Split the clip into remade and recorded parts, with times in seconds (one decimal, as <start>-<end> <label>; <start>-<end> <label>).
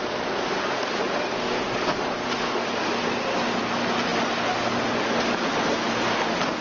0.0-6.6 recorded